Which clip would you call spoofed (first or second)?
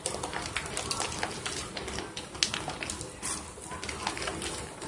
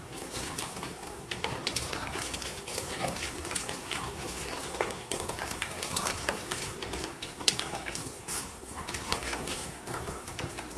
second